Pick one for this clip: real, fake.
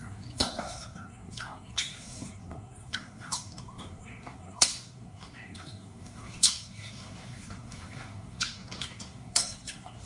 fake